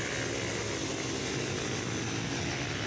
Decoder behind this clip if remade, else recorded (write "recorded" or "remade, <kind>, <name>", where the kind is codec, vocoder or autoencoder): recorded